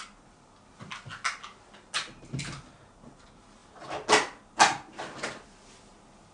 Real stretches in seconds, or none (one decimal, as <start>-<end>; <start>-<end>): 0.0-6.3